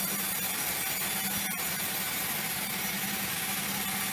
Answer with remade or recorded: recorded